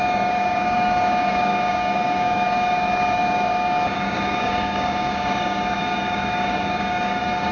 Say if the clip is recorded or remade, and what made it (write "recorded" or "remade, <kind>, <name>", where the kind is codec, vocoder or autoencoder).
remade, codec, DAC